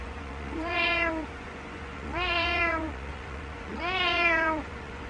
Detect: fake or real fake